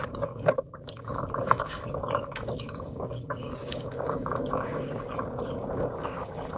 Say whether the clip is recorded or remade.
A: remade